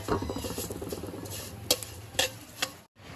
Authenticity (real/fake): real